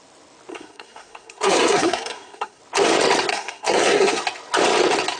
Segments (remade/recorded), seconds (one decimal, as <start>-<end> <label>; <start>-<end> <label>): 0.0-0.5 recorded; 0.5-2.6 remade; 2.6-3.3 recorded; 3.3-4.2 remade; 4.2-5.2 recorded